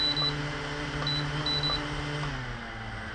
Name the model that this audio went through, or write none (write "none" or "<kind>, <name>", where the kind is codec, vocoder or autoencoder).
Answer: none